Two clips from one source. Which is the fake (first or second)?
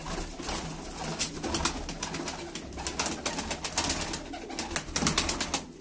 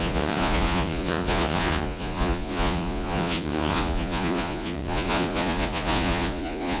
second